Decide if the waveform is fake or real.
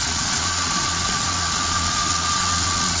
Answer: fake